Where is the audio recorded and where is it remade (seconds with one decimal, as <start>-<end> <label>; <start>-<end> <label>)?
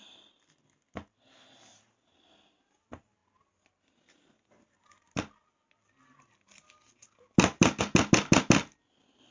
0.0-9.3 recorded